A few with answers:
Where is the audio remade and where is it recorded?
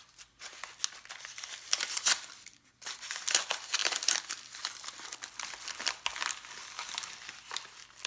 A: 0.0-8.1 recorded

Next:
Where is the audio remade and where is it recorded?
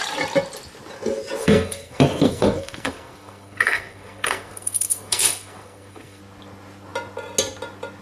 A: 0.0-1.4 recorded; 1.4-6.2 remade; 6.2-8.0 recorded